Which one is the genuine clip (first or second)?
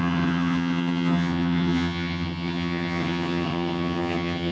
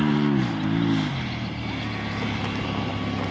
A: second